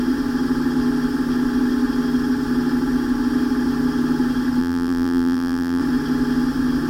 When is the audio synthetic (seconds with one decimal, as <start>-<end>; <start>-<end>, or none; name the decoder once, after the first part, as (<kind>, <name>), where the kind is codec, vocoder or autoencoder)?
4.6-5.8 (vocoder, BigVGAN v2)